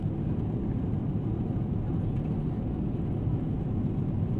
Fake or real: real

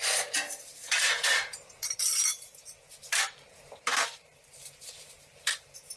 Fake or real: fake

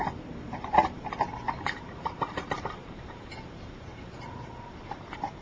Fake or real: fake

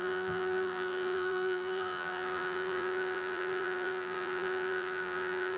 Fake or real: fake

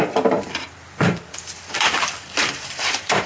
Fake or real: fake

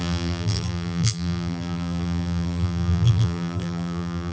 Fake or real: fake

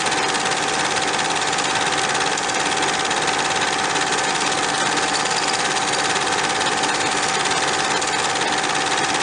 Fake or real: real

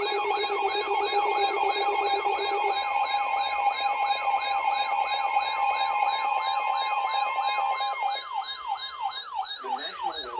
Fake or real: fake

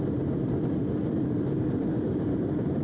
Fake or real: fake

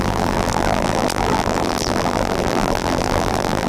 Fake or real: fake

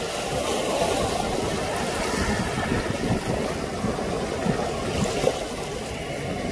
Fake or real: real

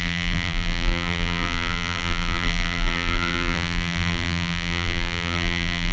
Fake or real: fake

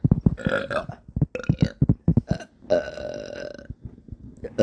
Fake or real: real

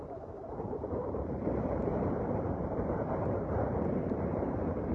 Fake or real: fake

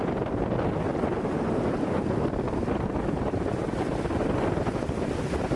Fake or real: real